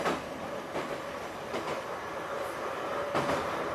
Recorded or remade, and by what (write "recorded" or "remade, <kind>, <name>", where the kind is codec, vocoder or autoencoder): remade, vocoder, BigVGAN v2